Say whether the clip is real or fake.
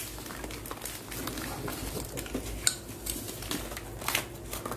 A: real